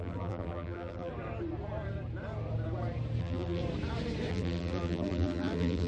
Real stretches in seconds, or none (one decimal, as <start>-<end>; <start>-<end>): 1.1-3.2; 3.6-4.3